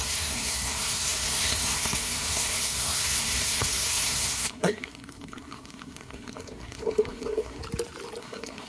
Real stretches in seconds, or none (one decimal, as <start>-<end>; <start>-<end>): 7.6-8.2